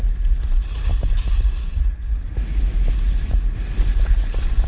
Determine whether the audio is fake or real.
real